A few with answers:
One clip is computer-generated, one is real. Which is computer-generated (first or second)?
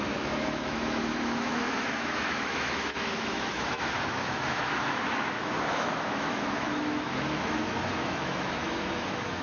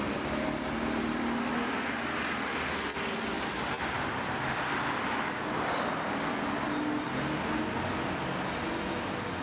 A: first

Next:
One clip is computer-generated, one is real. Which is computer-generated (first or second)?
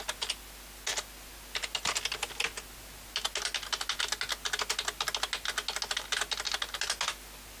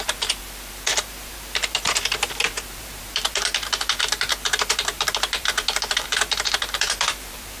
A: second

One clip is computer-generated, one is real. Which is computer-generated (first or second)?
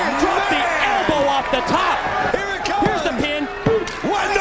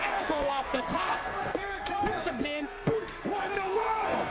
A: second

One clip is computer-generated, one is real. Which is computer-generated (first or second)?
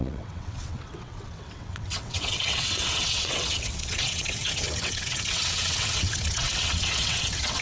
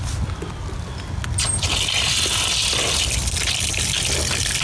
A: first